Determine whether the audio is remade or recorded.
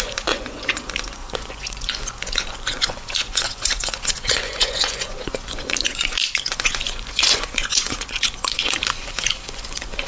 remade